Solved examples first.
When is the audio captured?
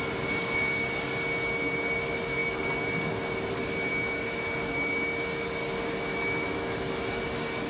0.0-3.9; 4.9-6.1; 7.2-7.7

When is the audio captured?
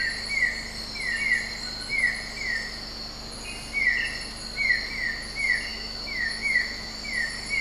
0.0-5.7; 6.9-7.6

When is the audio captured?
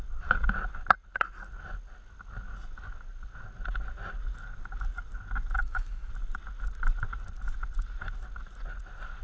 0.0-5.6; 6.1-9.2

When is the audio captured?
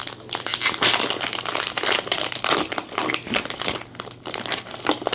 0.0-5.1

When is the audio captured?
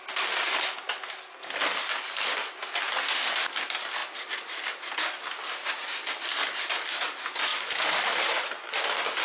0.0-9.2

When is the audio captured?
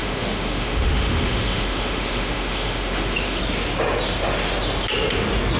3.4-5.6